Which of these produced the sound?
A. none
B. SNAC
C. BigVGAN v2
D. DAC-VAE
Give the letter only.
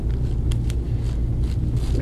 A